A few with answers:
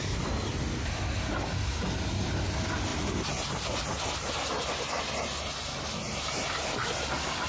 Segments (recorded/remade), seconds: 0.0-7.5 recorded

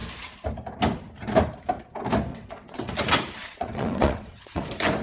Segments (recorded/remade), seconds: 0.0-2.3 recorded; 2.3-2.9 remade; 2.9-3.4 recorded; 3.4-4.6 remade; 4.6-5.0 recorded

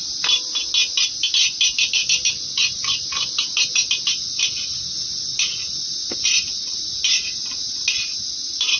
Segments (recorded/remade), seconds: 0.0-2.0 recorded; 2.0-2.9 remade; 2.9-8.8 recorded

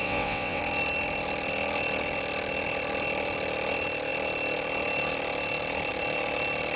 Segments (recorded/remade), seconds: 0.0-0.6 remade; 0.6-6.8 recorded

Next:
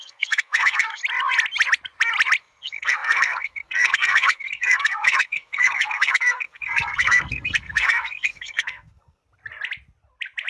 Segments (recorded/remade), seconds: 0.0-1.0 remade; 1.0-2.4 recorded; 2.4-9.2 remade; 9.2-10.5 recorded

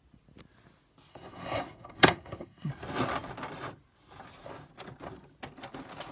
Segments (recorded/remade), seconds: 0.0-1.1 recorded; 1.1-2.7 remade; 2.7-6.1 recorded

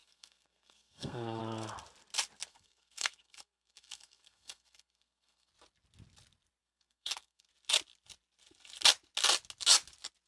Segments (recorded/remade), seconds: 0.0-1.4 remade; 1.4-2.5 recorded; 2.5-5.5 remade; 5.5-6.6 recorded; 6.6-7.5 remade; 7.5-10.3 recorded